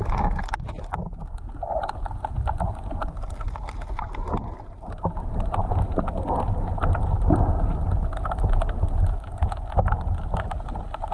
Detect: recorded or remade recorded